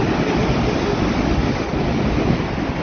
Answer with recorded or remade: recorded